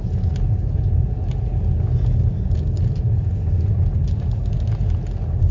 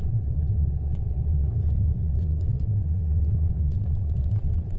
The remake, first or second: second